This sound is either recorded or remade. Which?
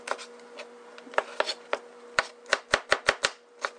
recorded